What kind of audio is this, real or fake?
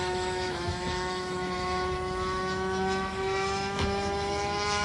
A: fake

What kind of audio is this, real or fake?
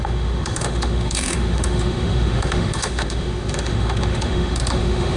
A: fake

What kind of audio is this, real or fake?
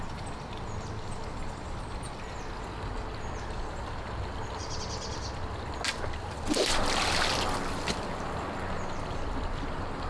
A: real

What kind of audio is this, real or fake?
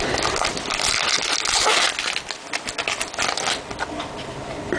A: real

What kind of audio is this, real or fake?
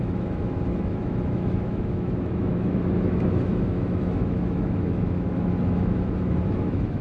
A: fake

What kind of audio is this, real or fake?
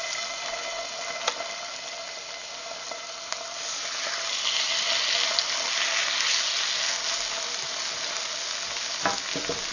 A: real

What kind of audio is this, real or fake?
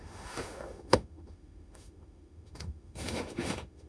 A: fake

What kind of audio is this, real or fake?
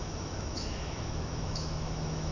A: fake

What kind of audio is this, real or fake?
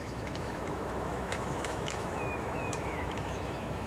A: fake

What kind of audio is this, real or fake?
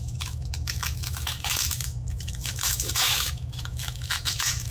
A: fake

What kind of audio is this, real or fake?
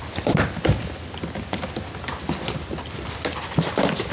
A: real